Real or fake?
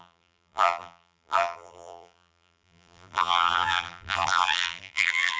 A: fake